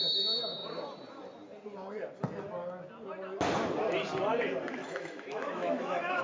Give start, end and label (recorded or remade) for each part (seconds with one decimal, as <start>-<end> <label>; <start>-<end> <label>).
0.0-4.8 recorded; 4.8-6.2 remade